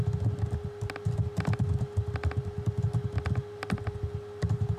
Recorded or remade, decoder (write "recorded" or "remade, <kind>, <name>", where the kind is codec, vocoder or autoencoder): recorded